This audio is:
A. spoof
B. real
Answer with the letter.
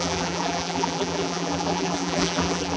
A